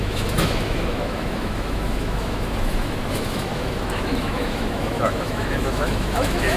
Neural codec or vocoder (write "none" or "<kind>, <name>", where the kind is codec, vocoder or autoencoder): autoencoder, DAC-VAE